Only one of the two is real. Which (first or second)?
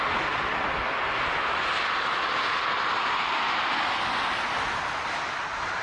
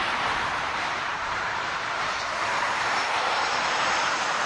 first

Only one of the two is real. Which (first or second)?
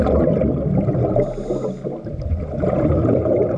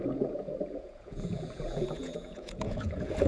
first